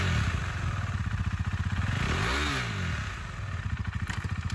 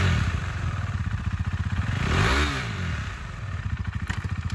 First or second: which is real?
first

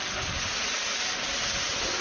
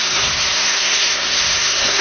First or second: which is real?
first